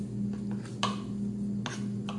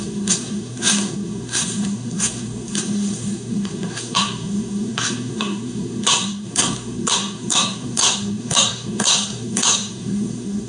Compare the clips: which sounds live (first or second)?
first